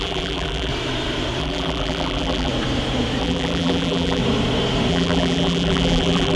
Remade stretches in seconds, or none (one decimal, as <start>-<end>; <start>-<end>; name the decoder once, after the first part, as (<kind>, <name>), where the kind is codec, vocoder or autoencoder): 0.0-0.7 (vocoder, BigVGAN v2); 1.4-2.5; 3.2-4.2; 4.9-6.4